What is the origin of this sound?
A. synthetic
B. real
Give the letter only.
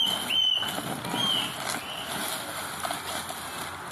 B